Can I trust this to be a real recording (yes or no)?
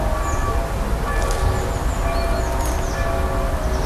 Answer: yes